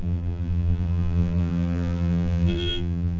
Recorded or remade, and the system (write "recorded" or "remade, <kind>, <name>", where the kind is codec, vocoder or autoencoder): remade, vocoder, BigVGAN v2